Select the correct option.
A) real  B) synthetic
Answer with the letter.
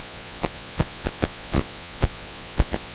B